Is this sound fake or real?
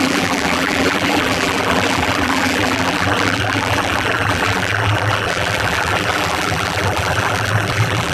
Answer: fake